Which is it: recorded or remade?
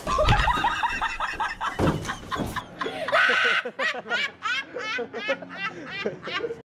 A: recorded